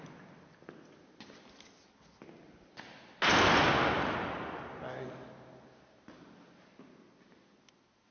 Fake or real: real